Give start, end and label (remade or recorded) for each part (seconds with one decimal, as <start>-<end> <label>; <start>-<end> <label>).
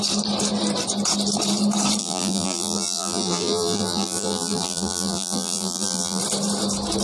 0.0-2.0 recorded; 2.0-6.2 remade; 6.2-7.0 recorded